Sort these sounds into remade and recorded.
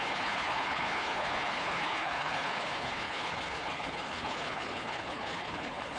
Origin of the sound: remade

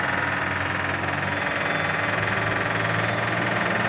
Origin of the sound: recorded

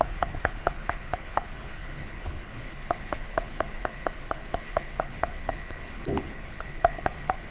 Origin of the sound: remade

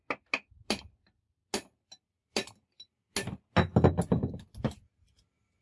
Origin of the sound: recorded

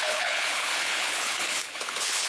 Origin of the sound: remade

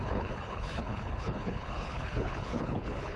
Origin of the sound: remade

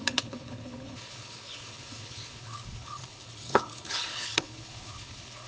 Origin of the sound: remade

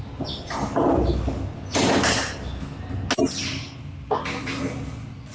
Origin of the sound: recorded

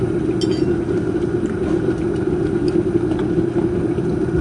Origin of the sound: recorded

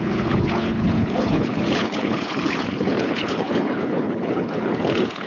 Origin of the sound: remade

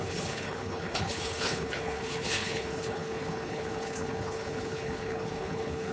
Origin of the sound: remade